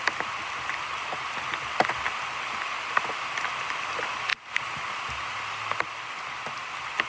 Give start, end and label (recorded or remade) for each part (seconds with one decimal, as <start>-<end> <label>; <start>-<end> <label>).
0.0-7.1 recorded